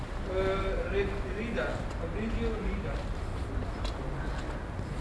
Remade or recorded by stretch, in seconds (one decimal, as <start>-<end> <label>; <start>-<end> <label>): 0.0-2.6 recorded; 2.6-3.7 remade; 3.7-5.0 recorded